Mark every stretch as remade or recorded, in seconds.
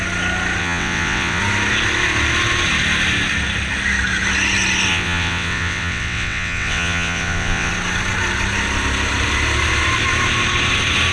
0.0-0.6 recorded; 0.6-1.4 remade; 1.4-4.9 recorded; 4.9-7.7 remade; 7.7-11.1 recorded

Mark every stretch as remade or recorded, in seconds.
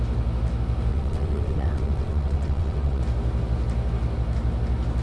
0.0-0.9 recorded; 0.9-3.0 remade; 3.0-5.0 recorded